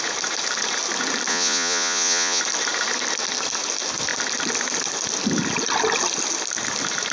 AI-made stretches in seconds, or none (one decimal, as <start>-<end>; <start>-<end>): 1.3-2.4